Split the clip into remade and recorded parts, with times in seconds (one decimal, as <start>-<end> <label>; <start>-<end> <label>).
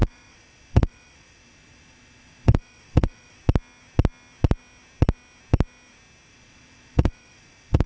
0.0-3.4 remade; 3.4-6.3 recorded; 6.3-7.9 remade